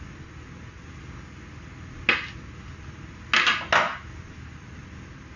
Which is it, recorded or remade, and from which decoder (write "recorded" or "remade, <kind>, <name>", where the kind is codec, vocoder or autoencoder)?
recorded